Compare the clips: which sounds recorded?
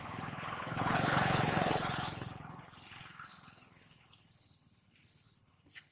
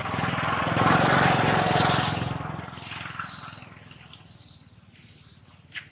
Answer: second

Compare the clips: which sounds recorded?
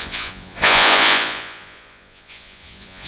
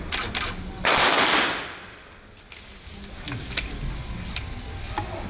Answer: second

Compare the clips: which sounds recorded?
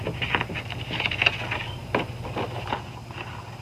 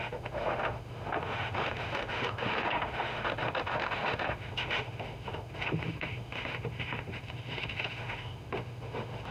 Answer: first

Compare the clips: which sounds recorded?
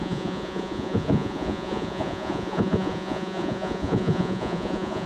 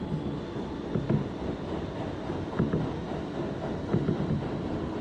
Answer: second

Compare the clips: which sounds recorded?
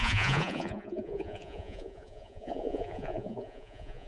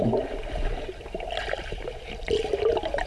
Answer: second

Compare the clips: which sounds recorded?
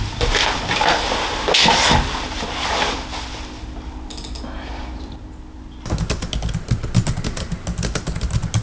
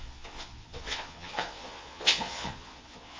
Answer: first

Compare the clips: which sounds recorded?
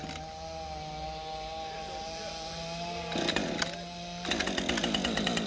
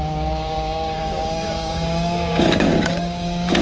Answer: first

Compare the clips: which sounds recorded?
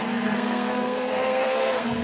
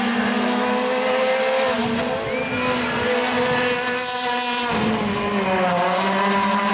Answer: second